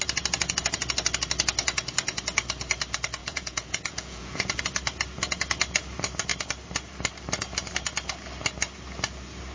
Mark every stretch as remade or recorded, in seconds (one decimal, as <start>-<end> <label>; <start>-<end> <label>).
0.0-3.2 recorded; 3.2-4.6 remade; 4.6-9.5 recorded